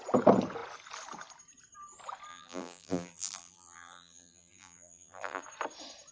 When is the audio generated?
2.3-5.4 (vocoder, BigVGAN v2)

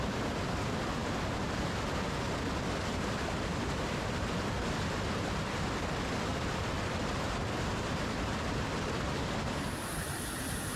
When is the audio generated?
0.0-1.0 (vocoder, BigVGAN v2); 1.6-6.3; 7.0-10.8

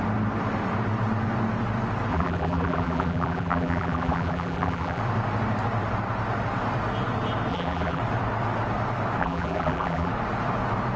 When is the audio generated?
2.1-5.0 (vocoder, BigVGAN v2); 7.5-8.0; 9.2-10.1

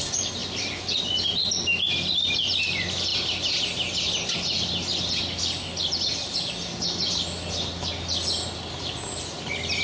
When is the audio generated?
none

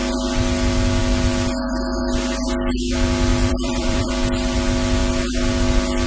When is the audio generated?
3.3-4.1 (vocoder, BigVGAN v2)